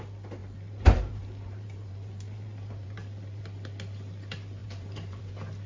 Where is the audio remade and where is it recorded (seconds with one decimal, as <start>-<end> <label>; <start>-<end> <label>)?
0.0-0.4 recorded; 0.4-3.4 remade; 3.4-4.6 recorded; 4.6-5.3 remade; 5.3-5.7 recorded